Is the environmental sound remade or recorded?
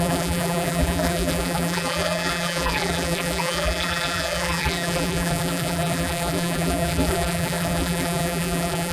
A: remade